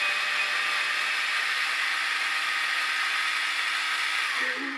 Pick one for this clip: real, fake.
real